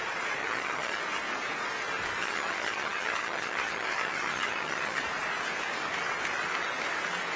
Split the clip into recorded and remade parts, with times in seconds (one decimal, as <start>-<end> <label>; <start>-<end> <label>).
0.0-0.4 recorded; 0.4-1.0 remade; 1.0-2.2 recorded; 2.2-5.0 remade; 5.0-7.4 recorded